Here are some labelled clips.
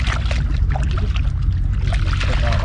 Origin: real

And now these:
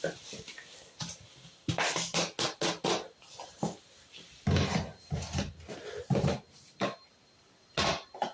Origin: real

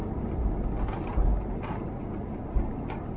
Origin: real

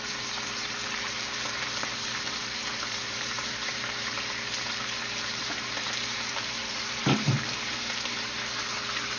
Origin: fake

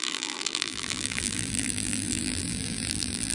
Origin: fake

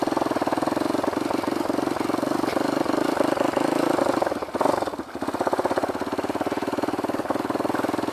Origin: real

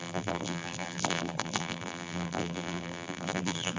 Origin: fake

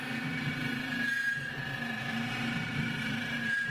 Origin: fake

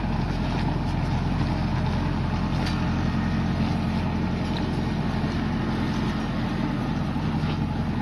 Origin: real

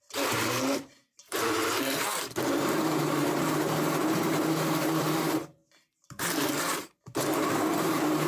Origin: fake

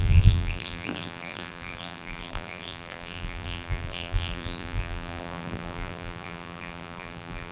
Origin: fake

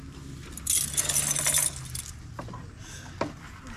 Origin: real